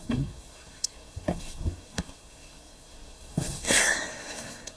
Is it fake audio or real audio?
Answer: fake